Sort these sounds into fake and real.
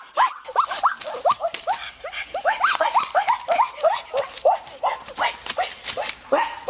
real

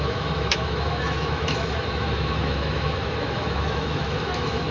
fake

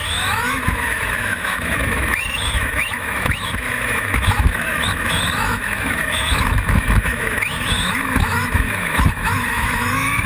fake